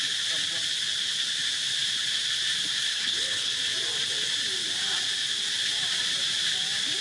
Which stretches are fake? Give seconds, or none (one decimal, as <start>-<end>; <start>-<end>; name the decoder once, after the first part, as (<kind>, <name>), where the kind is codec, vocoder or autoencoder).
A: 2.9-3.5 (codec, HILCodec)